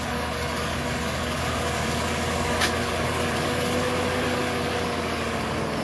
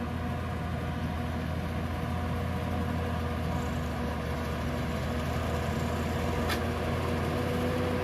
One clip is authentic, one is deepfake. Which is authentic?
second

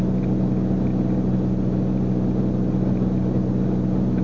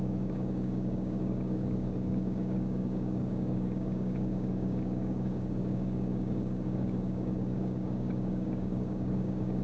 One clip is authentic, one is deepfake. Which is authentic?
first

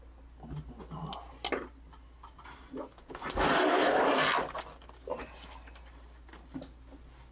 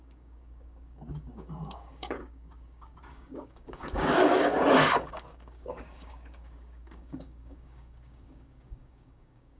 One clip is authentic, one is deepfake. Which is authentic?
first